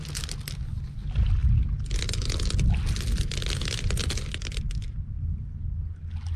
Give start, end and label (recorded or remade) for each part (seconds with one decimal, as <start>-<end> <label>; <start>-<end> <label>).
0.0-6.4 recorded